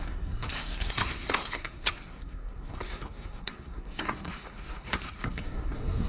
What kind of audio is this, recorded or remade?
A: remade